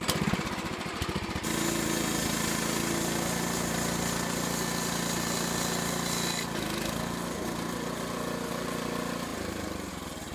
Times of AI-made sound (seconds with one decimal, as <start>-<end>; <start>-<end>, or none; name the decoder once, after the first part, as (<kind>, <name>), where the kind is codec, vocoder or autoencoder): none